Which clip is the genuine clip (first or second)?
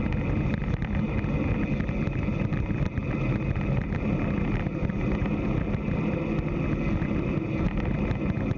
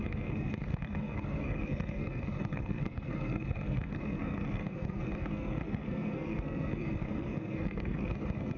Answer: first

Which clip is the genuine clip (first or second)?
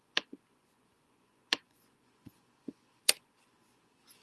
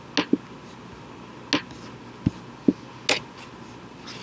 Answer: second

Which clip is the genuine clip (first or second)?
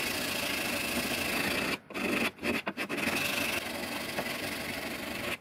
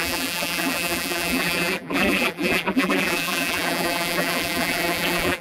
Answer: first